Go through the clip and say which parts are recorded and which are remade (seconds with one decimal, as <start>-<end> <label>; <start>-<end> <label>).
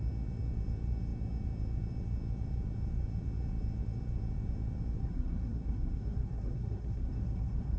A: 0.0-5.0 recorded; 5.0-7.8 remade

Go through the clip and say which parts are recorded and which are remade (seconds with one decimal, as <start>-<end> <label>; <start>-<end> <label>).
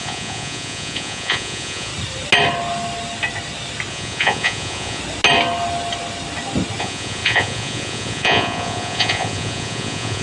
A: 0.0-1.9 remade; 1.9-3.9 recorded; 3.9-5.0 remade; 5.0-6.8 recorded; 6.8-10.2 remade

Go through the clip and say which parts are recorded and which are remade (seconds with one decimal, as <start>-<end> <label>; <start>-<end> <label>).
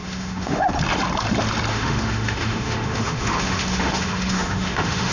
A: 0.0-0.7 remade; 0.7-1.7 recorded; 1.7-5.1 remade